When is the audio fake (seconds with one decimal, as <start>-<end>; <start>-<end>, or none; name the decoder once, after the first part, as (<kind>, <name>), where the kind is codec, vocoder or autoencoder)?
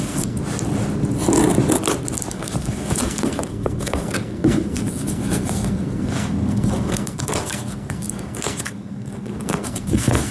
0.0-0.4 (codec, SNAC); 2.3-10.3